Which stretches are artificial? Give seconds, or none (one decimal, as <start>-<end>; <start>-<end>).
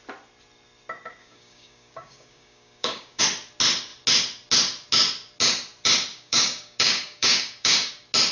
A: 1.2-3.2; 6.1-7.9